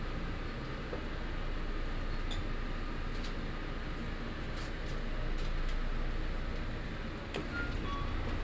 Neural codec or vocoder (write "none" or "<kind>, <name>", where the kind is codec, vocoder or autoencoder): none